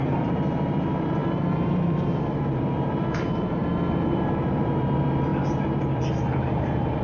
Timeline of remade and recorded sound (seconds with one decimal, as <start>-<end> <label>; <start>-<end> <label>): 0.0-7.0 remade